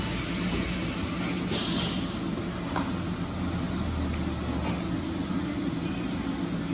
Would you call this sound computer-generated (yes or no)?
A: no